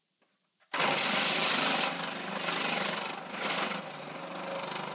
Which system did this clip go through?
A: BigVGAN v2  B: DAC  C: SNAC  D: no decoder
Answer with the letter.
D